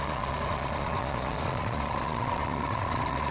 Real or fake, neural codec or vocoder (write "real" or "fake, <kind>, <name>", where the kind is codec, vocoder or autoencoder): fake, vocoder, Vocos